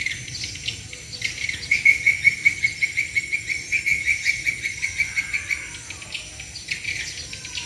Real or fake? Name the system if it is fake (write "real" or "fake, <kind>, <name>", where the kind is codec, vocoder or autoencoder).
real